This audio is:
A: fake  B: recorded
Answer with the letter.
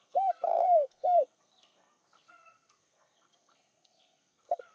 A